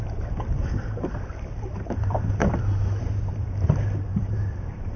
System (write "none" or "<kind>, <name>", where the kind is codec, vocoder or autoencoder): vocoder, BigVGAN v2